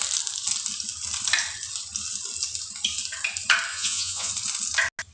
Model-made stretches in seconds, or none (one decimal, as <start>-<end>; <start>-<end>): 3.7-4.3